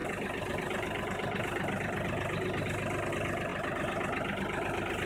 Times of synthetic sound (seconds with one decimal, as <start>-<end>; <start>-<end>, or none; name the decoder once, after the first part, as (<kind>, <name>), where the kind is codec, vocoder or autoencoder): none